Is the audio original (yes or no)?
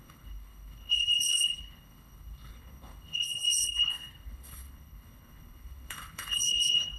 no